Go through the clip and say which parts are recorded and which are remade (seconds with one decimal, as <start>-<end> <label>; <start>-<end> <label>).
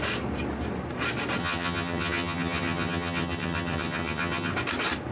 0.0-1.4 recorded; 1.4-4.5 remade; 4.5-5.1 recorded